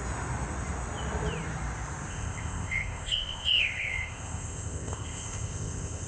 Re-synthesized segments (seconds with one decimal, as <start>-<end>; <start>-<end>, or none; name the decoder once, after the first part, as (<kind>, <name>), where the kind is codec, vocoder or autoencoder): 2.1-6.1 (codec, ZipCodec)